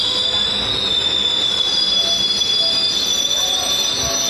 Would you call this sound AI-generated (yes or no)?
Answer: no